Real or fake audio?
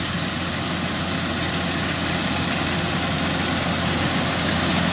real